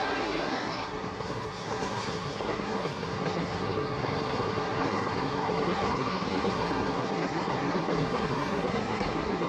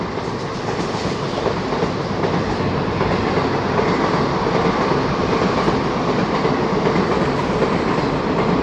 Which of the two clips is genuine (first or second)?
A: second